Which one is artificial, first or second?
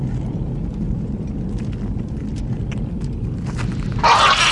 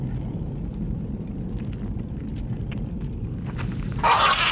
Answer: second